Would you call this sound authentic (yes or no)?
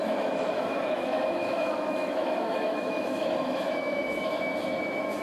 no